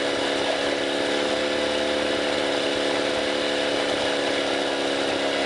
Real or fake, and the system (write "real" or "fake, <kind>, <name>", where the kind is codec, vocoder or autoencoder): real